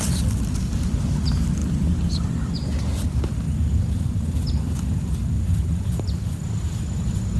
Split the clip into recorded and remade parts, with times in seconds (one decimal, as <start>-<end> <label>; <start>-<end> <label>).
0.0-7.4 recorded